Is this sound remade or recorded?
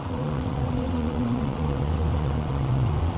remade